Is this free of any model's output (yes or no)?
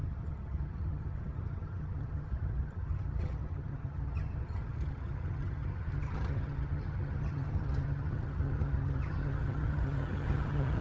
no